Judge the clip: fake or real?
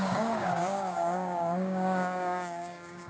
fake